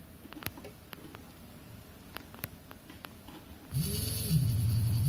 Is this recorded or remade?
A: recorded